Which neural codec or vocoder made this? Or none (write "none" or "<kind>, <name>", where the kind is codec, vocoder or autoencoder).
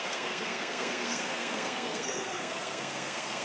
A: codec, SNAC